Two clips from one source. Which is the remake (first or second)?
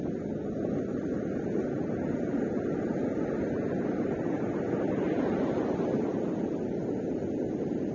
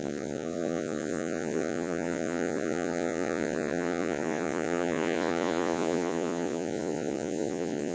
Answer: second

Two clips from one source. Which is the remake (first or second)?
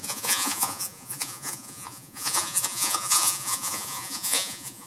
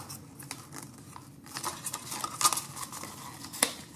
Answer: first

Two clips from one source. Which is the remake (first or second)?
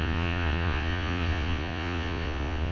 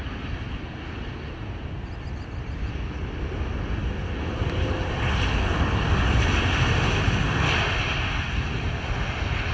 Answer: first